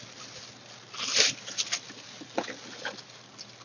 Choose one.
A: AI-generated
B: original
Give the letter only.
B